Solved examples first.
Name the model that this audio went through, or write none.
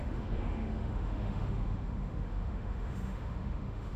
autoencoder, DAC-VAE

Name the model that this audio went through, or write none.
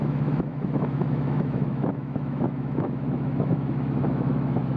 autoencoder, DAC-VAE